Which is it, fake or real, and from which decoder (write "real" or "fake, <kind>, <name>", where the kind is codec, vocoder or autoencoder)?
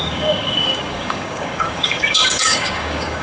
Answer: fake, codec, DAC